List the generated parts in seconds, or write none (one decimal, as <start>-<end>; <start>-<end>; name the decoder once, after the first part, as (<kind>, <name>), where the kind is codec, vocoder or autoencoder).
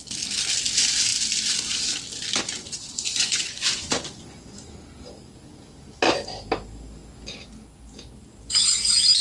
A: 2.6-4.6 (vocoder, Vocos)